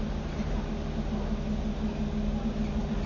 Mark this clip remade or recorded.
recorded